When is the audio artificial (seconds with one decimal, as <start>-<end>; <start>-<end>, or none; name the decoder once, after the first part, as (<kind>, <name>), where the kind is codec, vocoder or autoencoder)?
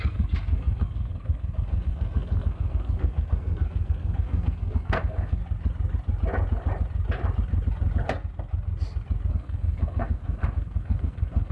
0.0-5.4 (codec, SNAC); 9.3-11.5